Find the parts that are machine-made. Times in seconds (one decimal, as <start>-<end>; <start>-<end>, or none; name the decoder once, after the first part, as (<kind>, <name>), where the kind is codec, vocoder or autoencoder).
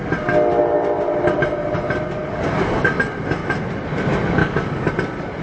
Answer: 2.3-3.0 (codec, DAC); 4.4-4.9